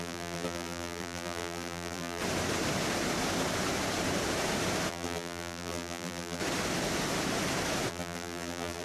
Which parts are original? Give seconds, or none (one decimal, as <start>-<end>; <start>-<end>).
2.2-4.9; 6.4-7.9